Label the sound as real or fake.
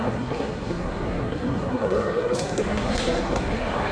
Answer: fake